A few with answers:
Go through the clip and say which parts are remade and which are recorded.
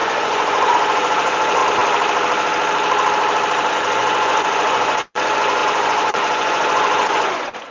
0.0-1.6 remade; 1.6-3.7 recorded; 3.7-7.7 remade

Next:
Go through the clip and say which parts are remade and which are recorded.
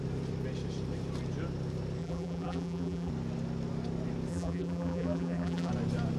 0.0-2.0 recorded; 2.0-3.1 remade; 3.1-4.3 recorded; 4.3-5.7 remade; 5.7-6.2 recorded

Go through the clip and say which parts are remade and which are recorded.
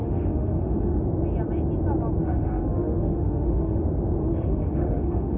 0.0-1.0 remade; 1.0-2.2 recorded; 2.2-3.8 remade; 3.8-4.2 recorded; 4.2-5.4 remade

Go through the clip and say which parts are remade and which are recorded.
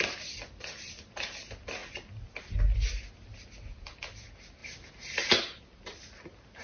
0.0-6.6 recorded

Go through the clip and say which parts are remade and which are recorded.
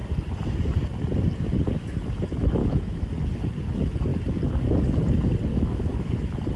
0.0-2.6 recorded; 2.6-3.1 remade; 3.1-5.5 recorded; 5.5-6.1 remade; 6.1-6.6 recorded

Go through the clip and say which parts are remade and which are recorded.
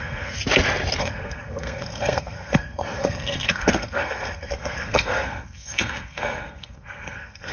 0.0-0.4 remade; 0.4-1.0 recorded; 1.0-7.5 remade